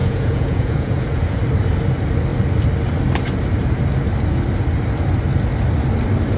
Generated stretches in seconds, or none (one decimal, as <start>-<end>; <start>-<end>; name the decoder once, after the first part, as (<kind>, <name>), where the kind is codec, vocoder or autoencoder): 0.0-1.4 (vocoder, Vocos)

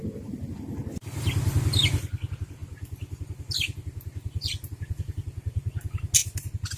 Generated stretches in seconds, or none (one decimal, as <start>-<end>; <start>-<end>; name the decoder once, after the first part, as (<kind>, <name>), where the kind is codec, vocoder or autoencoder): none

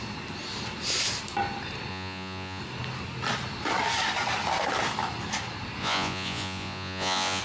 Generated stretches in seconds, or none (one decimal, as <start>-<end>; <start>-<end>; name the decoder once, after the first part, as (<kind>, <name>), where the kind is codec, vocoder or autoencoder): 1.9-2.6 (vocoder, Vocos); 5.8-7.4

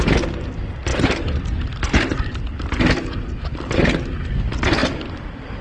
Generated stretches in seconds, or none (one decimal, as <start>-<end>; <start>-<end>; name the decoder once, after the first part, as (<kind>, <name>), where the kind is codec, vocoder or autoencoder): none

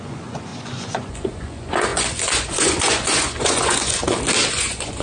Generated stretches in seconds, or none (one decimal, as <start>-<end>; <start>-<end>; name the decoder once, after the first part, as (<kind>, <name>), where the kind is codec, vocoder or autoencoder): 0.0-4.0 (vocoder, Vocos); 4.5-5.0

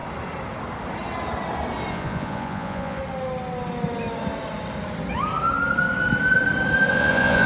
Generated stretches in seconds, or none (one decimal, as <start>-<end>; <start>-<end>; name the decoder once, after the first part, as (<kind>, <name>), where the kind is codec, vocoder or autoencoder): 1.9-3.0 (vocoder, Vocos); 6.9-7.5